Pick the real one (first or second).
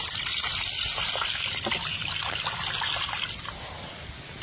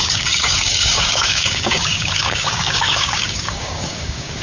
first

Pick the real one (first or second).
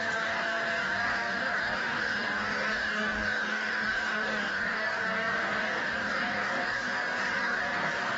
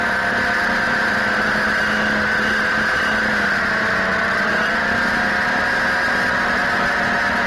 second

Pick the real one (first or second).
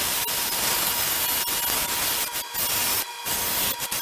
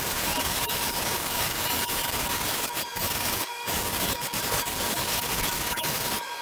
first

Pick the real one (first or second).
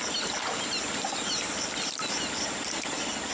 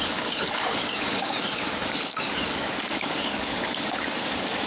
first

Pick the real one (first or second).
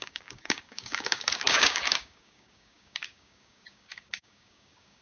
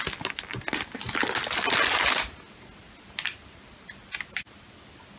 second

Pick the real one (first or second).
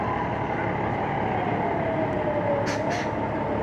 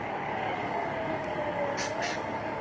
first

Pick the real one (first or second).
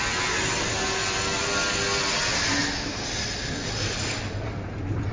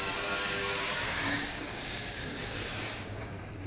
first